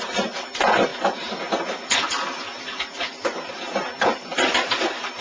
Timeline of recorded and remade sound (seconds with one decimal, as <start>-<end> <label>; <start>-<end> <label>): 0.0-5.2 remade